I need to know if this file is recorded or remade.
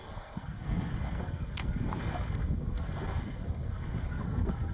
remade